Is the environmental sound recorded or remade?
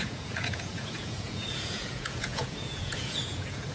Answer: remade